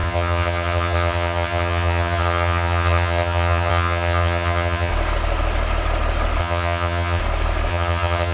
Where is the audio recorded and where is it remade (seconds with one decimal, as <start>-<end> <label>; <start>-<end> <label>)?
0.0-4.9 remade; 4.9-6.4 recorded; 6.4-7.2 remade; 7.2-7.7 recorded; 7.7-8.3 remade